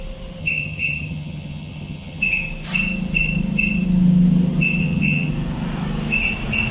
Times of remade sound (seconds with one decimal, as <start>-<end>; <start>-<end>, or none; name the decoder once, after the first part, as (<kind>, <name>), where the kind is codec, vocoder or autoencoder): 0.4-2.2 (vocoder, HiFi-GAN); 4.8-5.3